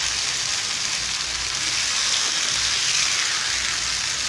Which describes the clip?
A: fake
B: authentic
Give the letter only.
B